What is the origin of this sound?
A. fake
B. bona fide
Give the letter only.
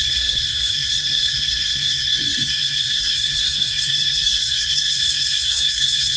A